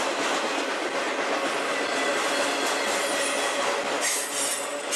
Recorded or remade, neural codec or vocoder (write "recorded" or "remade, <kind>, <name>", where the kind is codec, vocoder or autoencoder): recorded